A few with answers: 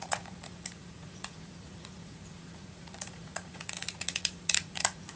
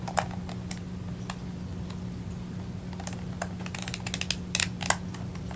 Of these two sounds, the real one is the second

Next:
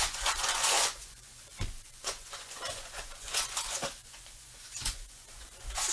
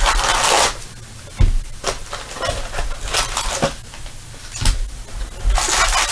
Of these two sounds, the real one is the second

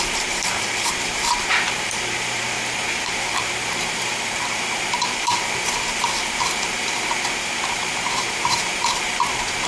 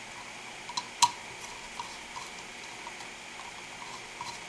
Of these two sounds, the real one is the second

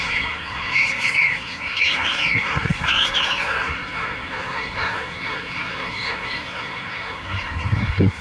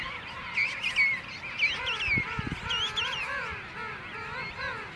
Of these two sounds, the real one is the second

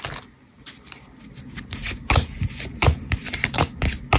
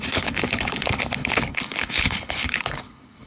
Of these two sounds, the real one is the first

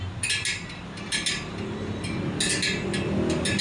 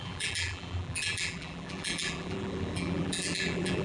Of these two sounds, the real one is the first